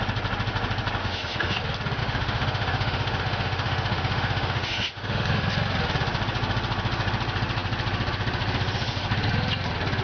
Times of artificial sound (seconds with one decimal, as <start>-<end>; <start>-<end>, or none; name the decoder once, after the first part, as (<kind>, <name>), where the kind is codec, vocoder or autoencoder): 1.0-1.6 (autoencoder, DAC-VAE); 2.0-5.5